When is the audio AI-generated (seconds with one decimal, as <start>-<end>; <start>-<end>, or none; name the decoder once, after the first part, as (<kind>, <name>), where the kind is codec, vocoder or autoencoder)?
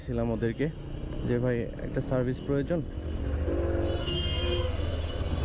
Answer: 4.0-5.4 (codec, SNAC)